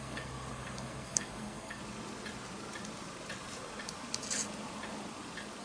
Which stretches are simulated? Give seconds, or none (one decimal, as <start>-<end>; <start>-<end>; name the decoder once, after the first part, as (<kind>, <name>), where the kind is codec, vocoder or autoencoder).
0.0-1.8 (codec, SNAC)

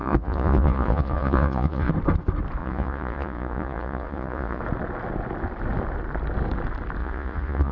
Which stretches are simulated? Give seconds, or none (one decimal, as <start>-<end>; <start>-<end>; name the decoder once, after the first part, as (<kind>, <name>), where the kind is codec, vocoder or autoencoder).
0.0-1.9 (vocoder, Vocos); 2.6-4.6; 7.0-7.7

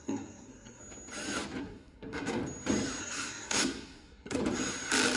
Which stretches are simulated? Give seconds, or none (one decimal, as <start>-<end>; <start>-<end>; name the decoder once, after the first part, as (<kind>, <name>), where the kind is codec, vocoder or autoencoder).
0.0-0.8 (codec, SNAC); 1.6-2.4; 3.0-4.4

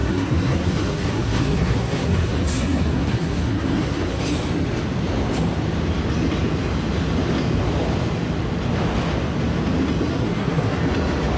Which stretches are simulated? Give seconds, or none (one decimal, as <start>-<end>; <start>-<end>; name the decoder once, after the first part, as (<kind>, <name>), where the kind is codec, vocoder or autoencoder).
0.0-4.2 (codec, SNAC); 10.1-10.8

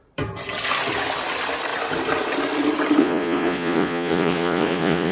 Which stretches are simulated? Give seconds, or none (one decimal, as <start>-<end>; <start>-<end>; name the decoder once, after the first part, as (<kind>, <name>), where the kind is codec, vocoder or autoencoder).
3.0-5.1 (vocoder, Vocos)